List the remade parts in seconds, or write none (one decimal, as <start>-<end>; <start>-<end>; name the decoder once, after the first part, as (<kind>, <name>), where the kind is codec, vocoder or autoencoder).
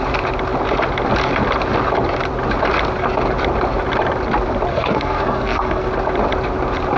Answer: 4.7-5.9 (codec, SNAC)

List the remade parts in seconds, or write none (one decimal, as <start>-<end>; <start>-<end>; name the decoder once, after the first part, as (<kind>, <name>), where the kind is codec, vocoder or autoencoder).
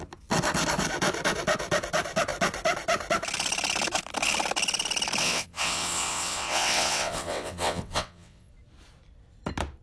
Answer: 5.2-8.5 (vocoder, WaveNeXt)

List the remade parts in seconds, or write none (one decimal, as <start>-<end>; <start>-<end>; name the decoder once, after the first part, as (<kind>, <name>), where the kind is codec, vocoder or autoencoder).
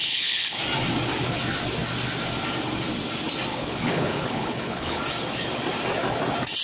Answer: 0.0-0.6 (codec, HILCodec); 3.5-5.0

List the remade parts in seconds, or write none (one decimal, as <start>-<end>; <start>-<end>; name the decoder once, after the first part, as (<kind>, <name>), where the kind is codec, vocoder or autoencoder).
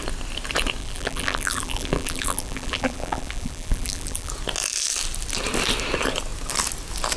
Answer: 0.8-4.3 (vocoder, BigVGAN v2)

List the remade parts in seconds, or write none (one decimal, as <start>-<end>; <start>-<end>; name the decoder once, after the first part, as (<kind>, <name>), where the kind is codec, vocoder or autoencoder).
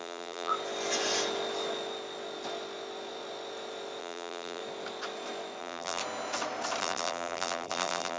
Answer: 0.0-0.5 (vocoder, BigVGAN v2); 4.0-4.6; 5.6-6.0; 6.8-8.2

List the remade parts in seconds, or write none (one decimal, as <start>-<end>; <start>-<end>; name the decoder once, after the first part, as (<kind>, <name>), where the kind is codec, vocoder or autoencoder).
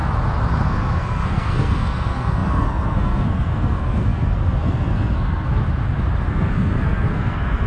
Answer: 0.6-5.6 (codec, SNAC); 6.3-7.7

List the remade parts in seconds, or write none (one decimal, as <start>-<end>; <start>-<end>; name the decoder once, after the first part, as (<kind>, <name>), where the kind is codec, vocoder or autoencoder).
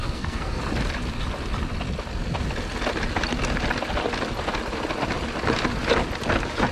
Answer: 0.0-0.6 (codec, SNAC)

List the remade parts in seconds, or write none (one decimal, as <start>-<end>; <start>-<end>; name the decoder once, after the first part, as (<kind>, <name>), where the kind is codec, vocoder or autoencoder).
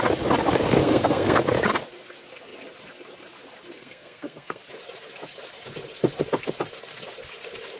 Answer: 0.8-1.4 (codec, SNAC); 3.8-4.6